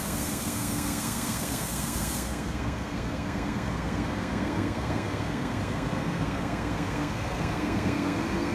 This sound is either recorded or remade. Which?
remade